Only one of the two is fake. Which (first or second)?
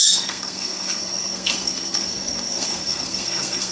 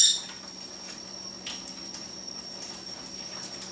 first